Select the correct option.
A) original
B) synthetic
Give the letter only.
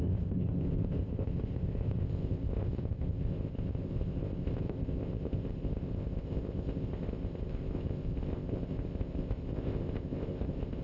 B